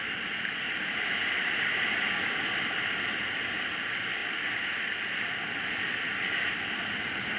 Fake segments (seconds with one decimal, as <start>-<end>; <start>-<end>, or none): none